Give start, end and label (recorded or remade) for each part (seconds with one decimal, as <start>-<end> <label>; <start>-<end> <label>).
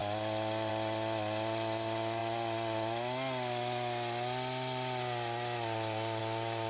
0.0-6.7 recorded